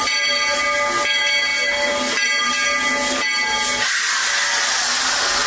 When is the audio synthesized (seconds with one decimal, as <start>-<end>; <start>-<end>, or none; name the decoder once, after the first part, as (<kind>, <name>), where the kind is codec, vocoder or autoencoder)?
none

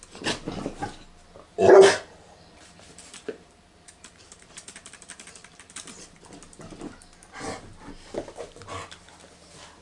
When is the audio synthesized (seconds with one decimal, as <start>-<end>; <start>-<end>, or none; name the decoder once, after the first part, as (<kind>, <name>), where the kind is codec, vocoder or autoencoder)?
1.5-6.2 (vocoder, BigVGAN v2)

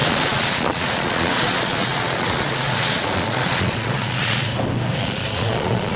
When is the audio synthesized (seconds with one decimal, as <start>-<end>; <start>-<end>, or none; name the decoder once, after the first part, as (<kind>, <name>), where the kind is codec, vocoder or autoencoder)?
0.0-4.5 (vocoder, Vocos); 5.0-6.0

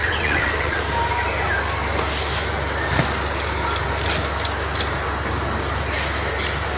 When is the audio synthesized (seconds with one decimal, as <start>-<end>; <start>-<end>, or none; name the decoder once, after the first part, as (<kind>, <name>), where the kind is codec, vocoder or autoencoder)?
0.0-0.8 (vocoder, WaveNeXt)

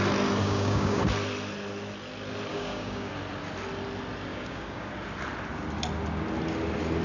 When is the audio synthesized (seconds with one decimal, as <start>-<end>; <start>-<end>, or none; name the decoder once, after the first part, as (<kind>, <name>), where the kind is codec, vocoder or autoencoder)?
0.4-1.0 (codec, DAC); 2.5-3.1; 4.3-4.9

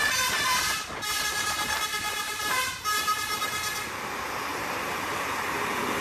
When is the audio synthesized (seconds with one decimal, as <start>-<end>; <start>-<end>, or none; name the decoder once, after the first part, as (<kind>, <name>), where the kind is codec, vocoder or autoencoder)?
0.0-6.0 (vocoder, BigVGAN v2)

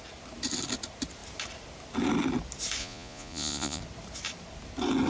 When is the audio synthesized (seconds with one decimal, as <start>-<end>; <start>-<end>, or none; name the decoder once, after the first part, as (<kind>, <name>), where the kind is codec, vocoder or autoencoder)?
2.8-3.8 (vocoder, Vocos)